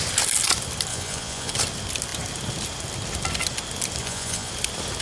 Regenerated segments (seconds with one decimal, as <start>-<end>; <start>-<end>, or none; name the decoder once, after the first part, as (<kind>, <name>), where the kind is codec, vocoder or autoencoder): 0.9-1.5 (vocoder, Vocos); 4.0-4.5